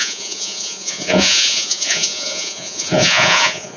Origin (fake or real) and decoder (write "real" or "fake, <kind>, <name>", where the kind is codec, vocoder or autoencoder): fake, vocoder, Vocos